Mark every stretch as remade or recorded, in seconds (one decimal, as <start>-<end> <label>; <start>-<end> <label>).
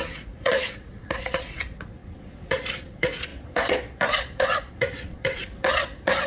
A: 0.0-6.3 remade